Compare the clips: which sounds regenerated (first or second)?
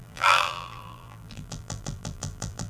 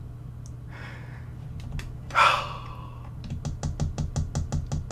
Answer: first